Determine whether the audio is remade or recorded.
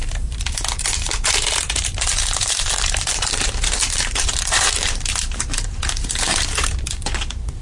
remade